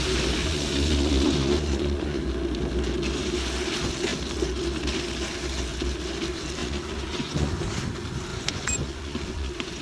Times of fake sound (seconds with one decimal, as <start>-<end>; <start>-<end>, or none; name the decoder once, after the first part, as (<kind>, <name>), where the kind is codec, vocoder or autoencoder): 0.4-2.2 (vocoder, Vocos); 6.6-7.6; 8.3-9.8